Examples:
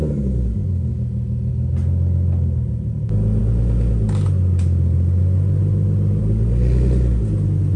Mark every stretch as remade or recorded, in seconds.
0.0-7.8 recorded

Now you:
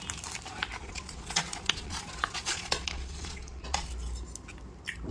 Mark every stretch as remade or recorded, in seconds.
0.0-0.8 recorded; 0.8-3.9 remade; 3.9-5.1 recorded

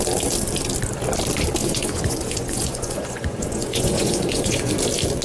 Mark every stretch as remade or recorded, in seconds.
0.0-1.6 recorded; 1.6-4.7 remade; 4.7-5.2 recorded

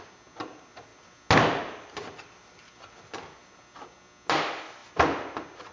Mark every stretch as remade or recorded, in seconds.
0.0-5.7 recorded

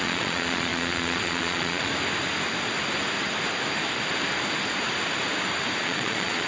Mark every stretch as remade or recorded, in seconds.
0.0-1.9 remade; 1.9-5.8 recorded; 5.8-6.5 remade

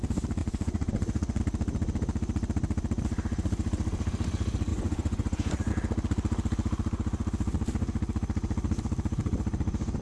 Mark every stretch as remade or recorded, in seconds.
0.0-0.4 recorded; 0.4-1.4 remade; 1.4-4.7 recorded; 4.7-5.7 remade; 5.7-10.0 recorded